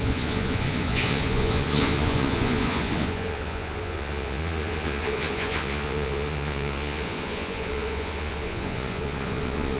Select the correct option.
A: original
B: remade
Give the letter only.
B